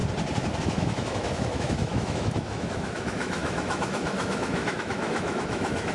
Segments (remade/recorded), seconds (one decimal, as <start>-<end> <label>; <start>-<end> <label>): 0.0-0.6 recorded; 0.6-5.9 remade